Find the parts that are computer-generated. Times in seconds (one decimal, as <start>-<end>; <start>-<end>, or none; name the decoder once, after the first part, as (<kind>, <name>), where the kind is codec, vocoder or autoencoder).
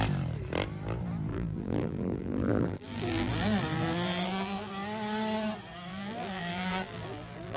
1.3-4.7 (vocoder, BigVGAN v2); 5.9-7.6